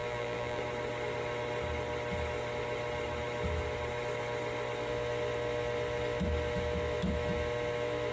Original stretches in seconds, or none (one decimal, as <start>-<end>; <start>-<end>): 0.6-8.1